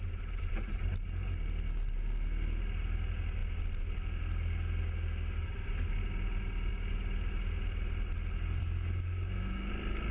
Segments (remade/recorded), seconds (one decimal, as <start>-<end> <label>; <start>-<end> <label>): 0.0-8.6 recorded; 8.6-9.7 remade; 9.7-10.1 recorded